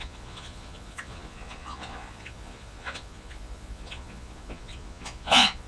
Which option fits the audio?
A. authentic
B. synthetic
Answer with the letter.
B